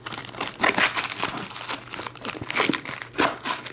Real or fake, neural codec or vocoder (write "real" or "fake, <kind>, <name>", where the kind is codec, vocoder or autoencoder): real